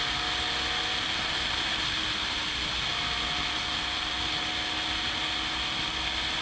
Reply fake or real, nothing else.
real